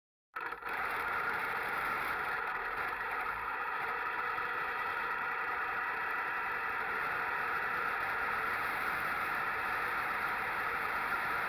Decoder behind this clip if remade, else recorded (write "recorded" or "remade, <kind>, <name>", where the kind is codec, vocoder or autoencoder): remade, vocoder, BigVGAN v2